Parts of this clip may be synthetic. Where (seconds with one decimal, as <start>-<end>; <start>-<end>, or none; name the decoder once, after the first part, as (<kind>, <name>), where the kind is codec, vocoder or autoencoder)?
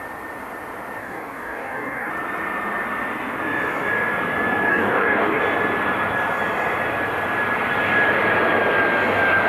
1.0-2.1 (codec, DAC); 4.7-5.4